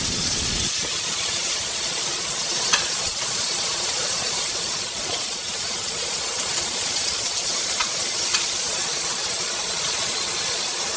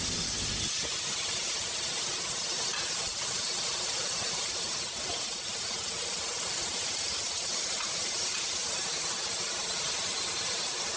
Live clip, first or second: second